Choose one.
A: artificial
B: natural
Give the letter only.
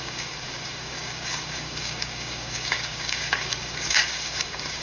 A